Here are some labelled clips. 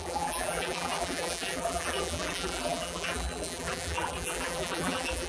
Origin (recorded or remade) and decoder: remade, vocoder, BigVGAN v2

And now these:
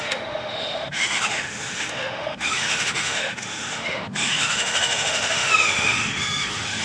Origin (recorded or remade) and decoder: remade, autoencoder, DAC-VAE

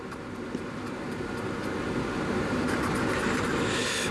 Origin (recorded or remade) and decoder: recorded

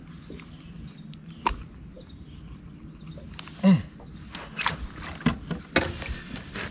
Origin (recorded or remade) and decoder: recorded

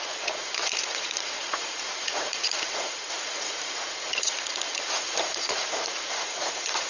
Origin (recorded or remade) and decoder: remade, vocoder, Vocos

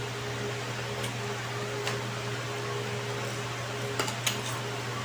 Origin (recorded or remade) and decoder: recorded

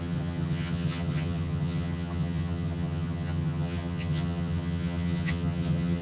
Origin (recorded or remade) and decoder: remade, vocoder, HiFi-GAN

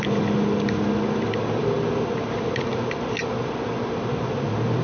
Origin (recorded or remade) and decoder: recorded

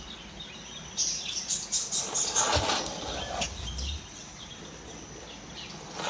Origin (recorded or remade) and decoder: recorded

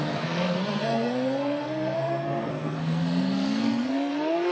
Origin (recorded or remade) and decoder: remade, codec, SNAC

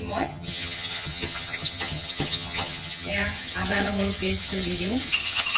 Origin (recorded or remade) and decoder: remade, vocoder, HiFi-GAN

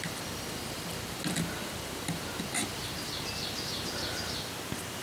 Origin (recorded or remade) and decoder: recorded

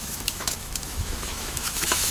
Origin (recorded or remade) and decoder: remade, autoencoder, DAC-VAE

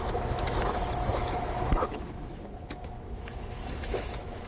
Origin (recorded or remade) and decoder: remade, autoencoder, DAC-VAE